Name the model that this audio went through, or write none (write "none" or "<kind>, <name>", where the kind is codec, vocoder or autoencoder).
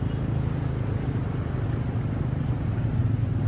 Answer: none